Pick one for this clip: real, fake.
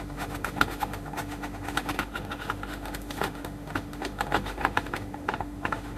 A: fake